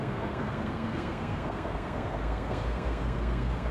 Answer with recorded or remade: remade